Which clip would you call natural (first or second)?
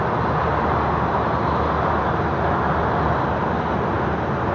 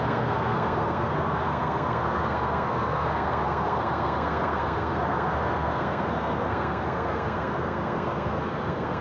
first